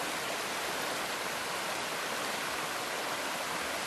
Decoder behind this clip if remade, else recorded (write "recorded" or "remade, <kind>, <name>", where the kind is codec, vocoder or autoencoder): recorded